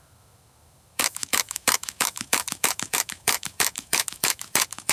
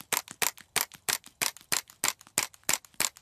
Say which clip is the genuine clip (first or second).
second